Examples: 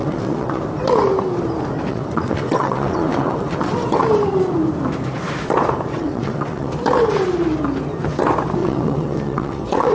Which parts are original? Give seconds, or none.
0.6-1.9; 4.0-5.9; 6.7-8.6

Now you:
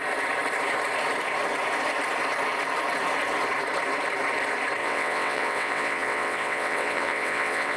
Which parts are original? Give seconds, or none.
0.0-4.8

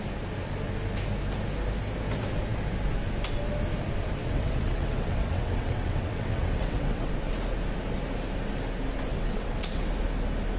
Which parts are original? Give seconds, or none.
0.0-4.2; 7.1-9.1; 9.9-10.6

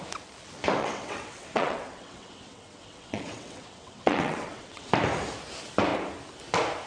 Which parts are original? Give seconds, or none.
0.0-0.8; 4.9-6.9

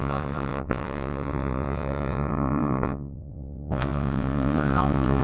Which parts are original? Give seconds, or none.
none

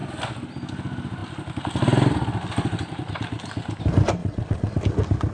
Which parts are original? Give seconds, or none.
0.0-4.2; 4.8-5.3

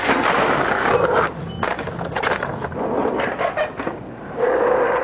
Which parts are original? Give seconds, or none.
0.0-5.0

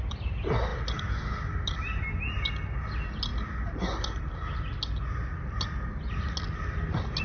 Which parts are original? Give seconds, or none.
0.0-7.2